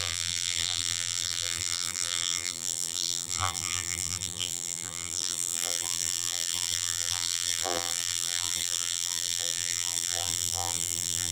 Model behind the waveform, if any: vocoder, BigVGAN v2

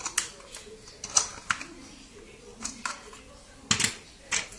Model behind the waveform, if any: none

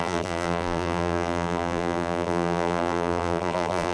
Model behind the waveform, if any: vocoder, BigVGAN v2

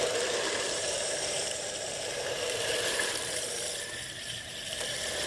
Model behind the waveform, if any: vocoder, BigVGAN v2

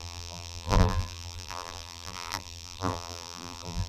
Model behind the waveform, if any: vocoder, BigVGAN v2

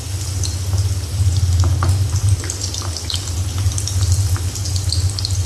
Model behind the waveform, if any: none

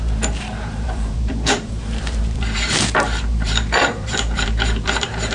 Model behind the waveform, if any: vocoder, BigVGAN v2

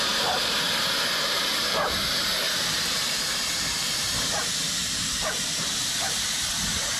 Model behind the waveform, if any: vocoder, BigVGAN v2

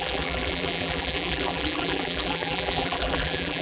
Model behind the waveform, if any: vocoder, BigVGAN v2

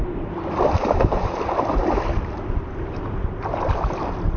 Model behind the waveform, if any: vocoder, BigVGAN v2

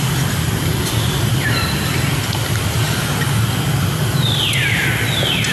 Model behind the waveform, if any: vocoder, BigVGAN v2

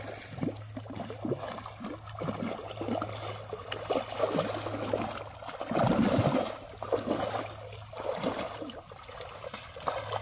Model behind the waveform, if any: none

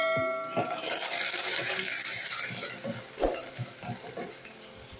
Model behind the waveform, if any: vocoder, BigVGAN v2